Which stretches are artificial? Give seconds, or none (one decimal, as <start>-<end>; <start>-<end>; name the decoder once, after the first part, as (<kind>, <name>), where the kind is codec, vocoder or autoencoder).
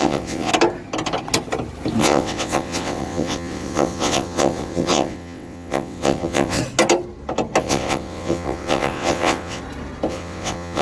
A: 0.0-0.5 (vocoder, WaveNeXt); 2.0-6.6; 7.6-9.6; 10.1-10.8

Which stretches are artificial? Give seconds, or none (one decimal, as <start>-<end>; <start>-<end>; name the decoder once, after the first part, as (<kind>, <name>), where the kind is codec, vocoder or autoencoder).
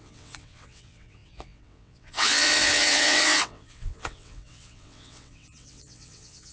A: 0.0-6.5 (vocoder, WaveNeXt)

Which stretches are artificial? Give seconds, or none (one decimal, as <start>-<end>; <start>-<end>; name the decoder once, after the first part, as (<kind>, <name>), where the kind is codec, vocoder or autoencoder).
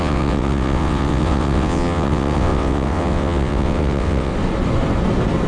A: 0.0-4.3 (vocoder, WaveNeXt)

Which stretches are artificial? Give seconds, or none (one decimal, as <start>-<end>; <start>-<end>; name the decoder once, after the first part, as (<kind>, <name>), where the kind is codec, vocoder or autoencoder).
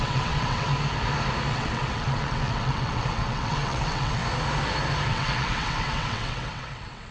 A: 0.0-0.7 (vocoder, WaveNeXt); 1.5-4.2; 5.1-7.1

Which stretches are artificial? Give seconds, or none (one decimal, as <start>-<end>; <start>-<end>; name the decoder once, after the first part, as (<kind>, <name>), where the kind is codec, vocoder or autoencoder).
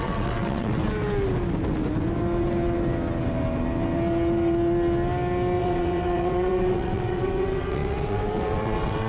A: 0.0-0.8 (vocoder, WaveNeXt); 5.6-9.1